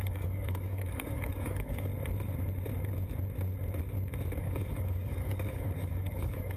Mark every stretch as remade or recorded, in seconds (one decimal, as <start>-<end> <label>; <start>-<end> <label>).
0.0-1.9 remade; 1.9-4.4 recorded; 4.4-6.6 remade